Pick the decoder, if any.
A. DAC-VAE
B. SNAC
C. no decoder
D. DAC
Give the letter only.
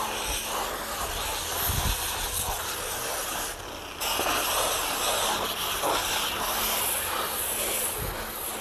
C